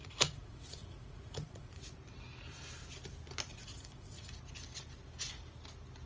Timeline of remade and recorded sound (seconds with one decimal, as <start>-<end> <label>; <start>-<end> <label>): 0.0-1.8 remade; 1.8-3.5 recorded; 3.5-4.3 remade; 4.3-6.1 recorded